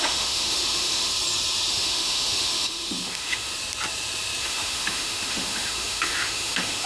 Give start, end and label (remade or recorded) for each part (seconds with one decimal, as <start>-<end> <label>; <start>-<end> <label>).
0.0-1.1 remade; 1.1-1.7 recorded; 1.7-3.5 remade; 3.5-4.4 recorded; 4.4-6.9 remade

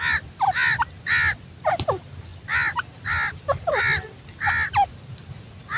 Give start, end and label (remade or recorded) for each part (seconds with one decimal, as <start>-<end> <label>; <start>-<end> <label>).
0.0-5.8 recorded

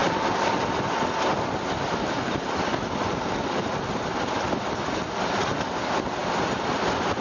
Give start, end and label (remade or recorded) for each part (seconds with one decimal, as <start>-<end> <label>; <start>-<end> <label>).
0.0-7.2 recorded

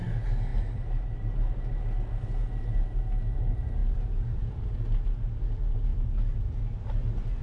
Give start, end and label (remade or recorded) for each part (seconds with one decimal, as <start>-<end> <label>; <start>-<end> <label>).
0.0-3.8 recorded; 3.8-4.6 remade; 4.6-7.4 recorded